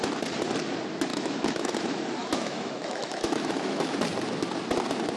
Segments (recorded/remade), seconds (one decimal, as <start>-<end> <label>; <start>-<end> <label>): 0.0-1.1 recorded; 1.1-1.7 remade; 1.7-2.2 recorded; 2.2-3.9 remade; 3.9-5.2 recorded